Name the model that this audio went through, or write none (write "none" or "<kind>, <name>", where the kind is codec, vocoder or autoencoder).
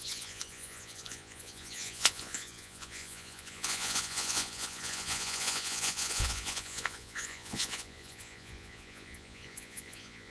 vocoder, Vocos